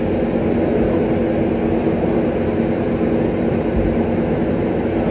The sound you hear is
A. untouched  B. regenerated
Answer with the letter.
A